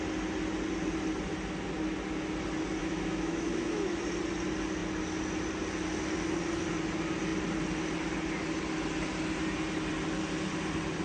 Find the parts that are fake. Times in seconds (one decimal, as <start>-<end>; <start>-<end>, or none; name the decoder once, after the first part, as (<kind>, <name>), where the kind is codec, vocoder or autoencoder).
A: 2.8-4.0 (autoencoder, DAC-VAE)